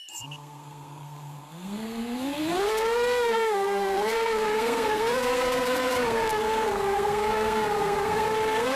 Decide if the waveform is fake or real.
fake